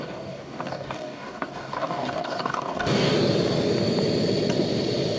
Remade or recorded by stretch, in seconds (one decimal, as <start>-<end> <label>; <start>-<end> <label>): 0.0-3.1 remade; 3.1-5.2 recorded